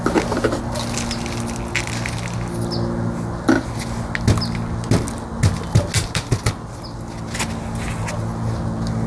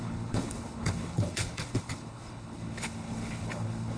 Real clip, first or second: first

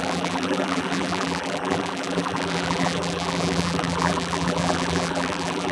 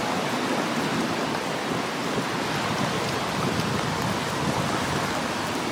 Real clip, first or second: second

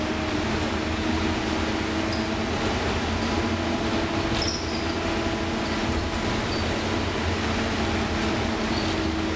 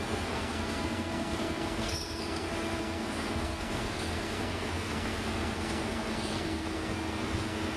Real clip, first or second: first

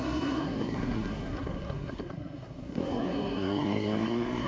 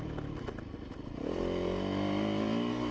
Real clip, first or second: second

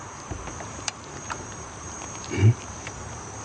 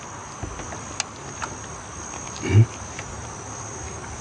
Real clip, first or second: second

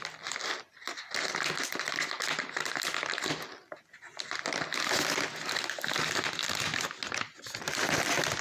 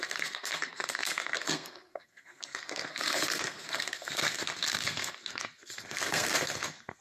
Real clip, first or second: first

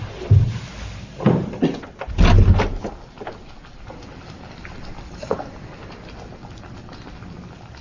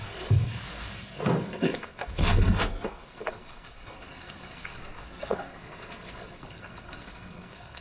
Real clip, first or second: first